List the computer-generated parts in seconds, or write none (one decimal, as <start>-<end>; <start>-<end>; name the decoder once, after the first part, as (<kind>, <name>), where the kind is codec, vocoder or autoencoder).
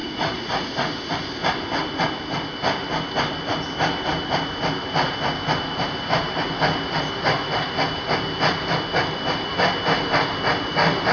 0.0-0.9 (vocoder, Vocos)